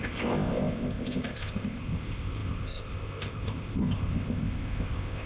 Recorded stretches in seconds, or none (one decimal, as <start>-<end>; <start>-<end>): none